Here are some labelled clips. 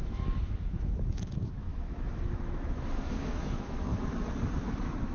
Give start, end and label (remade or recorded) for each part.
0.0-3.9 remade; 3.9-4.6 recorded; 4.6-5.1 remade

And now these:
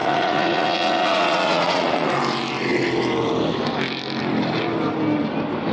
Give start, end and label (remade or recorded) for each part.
0.0-2.1 remade; 2.1-5.7 recorded

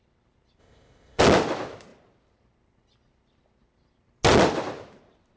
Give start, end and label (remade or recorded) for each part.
0.0-0.6 recorded; 0.6-1.2 remade; 1.2-5.4 recorded